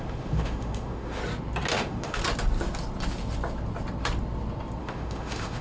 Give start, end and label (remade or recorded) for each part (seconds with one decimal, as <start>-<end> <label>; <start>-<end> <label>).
0.0-1.2 remade; 1.2-1.7 recorded; 1.7-2.2 remade; 2.2-4.8 recorded; 4.8-5.6 remade